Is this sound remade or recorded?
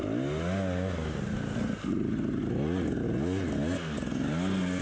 recorded